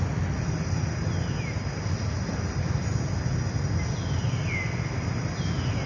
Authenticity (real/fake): real